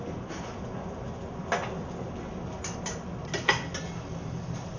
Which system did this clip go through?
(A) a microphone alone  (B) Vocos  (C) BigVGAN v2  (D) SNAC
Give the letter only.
A